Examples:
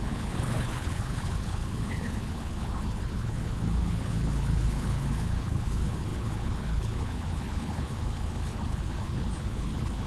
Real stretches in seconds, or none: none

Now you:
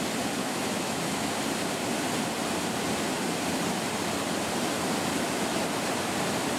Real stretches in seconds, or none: 0.0-0.4; 1.3-6.6